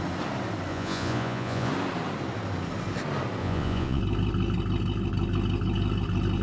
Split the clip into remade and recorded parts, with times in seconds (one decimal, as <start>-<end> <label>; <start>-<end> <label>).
0.0-0.7 recorded; 0.7-1.7 remade; 1.7-3.4 recorded; 3.4-4.0 remade; 4.0-6.4 recorded